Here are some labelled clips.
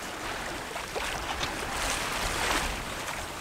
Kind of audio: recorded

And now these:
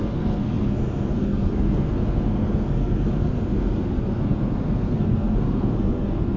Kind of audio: remade